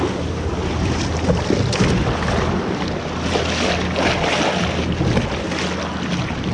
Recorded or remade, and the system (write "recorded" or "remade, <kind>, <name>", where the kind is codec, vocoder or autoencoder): recorded